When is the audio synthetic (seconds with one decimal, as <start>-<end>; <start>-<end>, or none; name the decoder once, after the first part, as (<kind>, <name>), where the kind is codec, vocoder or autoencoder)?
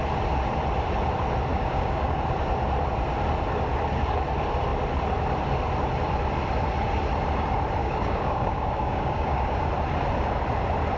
1.5-2.2 (codec, DAC); 7.8-9.7